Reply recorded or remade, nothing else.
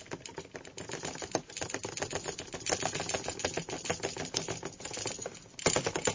recorded